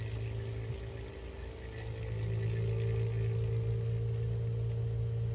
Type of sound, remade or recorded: recorded